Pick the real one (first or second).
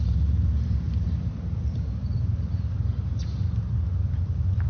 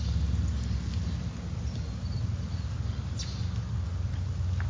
second